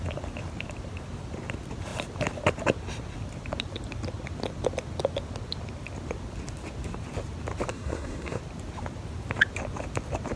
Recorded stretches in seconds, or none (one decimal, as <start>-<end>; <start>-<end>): 0.0-7.7; 8.4-10.4